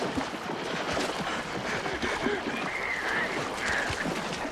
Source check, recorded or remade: recorded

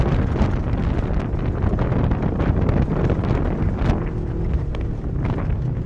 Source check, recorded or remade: recorded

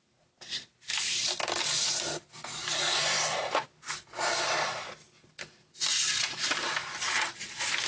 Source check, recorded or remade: recorded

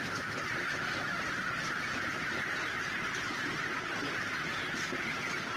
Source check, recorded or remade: recorded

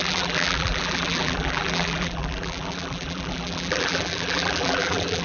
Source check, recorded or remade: remade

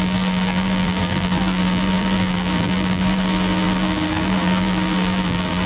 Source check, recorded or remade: remade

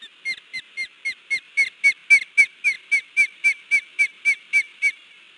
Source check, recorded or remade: recorded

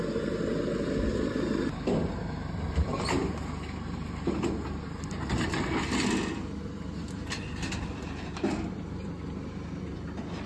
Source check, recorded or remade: recorded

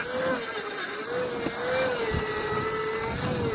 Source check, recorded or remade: recorded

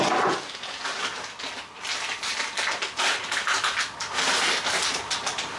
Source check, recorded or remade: recorded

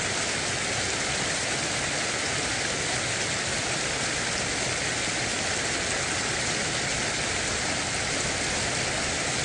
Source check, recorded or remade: recorded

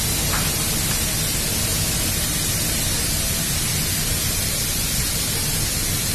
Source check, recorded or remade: recorded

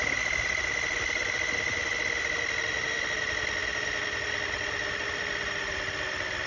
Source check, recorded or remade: recorded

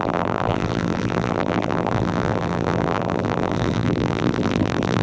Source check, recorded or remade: remade